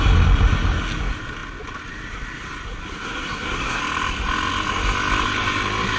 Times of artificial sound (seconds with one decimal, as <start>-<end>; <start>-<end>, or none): 2.8-3.8